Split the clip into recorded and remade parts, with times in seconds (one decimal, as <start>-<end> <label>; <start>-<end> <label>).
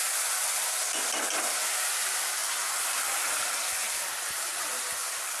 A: 0.0-5.4 recorded